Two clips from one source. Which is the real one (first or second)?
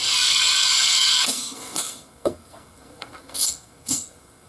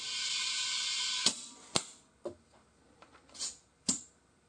second